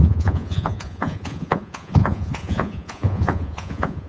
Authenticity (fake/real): fake